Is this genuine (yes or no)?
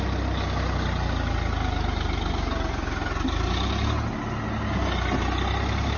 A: yes